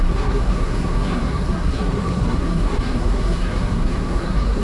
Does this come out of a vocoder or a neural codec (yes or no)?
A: yes